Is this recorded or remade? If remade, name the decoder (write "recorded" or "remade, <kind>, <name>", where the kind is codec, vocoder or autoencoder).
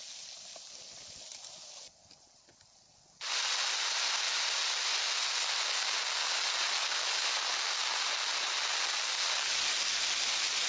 recorded